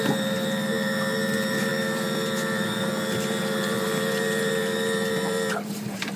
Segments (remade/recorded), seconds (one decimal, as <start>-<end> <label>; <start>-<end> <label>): 0.0-6.2 remade